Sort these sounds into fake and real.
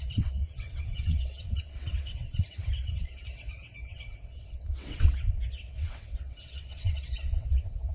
fake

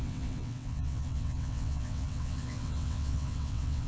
fake